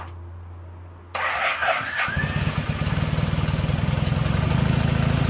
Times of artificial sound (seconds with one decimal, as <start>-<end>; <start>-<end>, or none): 1.3-2.0